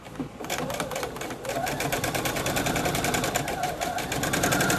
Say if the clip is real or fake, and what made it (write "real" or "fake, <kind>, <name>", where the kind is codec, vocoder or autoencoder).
real